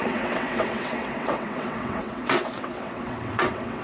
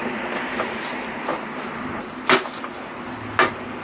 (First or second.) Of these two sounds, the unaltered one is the second